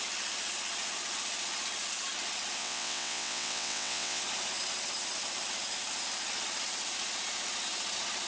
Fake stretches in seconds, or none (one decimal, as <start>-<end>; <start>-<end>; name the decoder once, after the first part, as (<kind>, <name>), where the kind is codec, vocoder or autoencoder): 2.6-4.2 (vocoder, WaveNeXt)